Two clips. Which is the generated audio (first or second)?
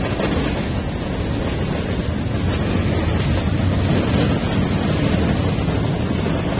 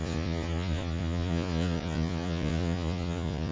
second